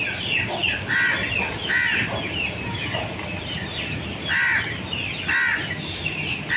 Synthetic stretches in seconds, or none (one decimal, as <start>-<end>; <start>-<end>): none